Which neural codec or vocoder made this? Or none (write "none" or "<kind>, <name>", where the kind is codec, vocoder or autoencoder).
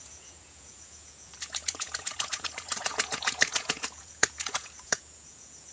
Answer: vocoder, Vocos